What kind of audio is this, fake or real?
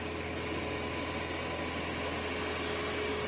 real